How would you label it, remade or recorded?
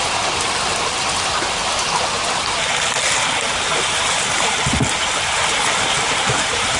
recorded